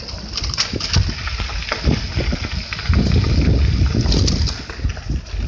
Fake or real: real